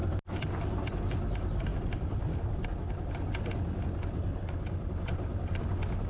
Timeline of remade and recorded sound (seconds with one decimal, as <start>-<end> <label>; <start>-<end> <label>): 0.0-6.1 recorded

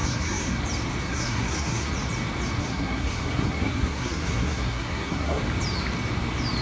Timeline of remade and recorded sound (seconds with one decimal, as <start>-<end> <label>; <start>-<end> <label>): 0.0-0.6 remade; 0.6-1.0 recorded; 1.0-1.9 remade; 1.9-2.6 recorded; 2.6-5.4 remade; 5.4-6.6 recorded

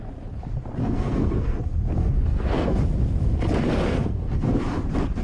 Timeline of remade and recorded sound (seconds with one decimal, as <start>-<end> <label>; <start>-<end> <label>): 0.0-0.8 recorded; 0.8-1.6 remade; 1.6-2.0 recorded; 2.0-2.8 remade; 2.8-3.9 recorded; 3.9-4.5 remade; 4.5-5.2 recorded

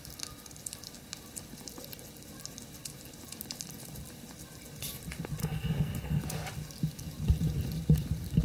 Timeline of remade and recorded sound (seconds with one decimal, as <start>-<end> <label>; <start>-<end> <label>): 0.0-5.4 recorded; 5.4-6.2 remade; 6.2-8.4 recorded

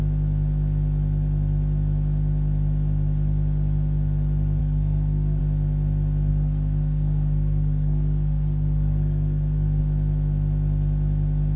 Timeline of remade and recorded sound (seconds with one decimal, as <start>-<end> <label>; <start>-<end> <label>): 0.0-4.6 recorded; 4.6-5.4 remade; 5.4-6.3 recorded; 6.3-9.8 remade; 9.8-11.6 recorded